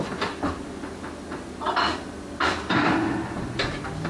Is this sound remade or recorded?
recorded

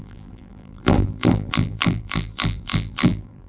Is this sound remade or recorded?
remade